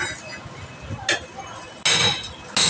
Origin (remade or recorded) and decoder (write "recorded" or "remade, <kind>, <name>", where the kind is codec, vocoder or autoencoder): recorded